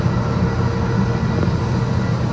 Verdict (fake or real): real